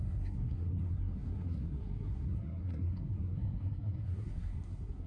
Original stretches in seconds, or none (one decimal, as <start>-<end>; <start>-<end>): none